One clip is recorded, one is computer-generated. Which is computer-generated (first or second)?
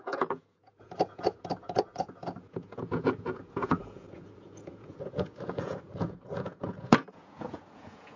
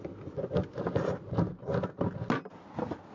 first